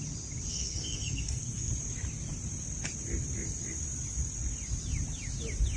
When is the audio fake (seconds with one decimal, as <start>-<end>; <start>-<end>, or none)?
0.5-1.7